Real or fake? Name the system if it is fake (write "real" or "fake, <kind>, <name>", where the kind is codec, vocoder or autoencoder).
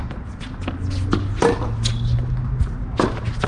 real